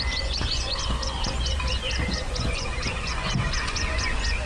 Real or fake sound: fake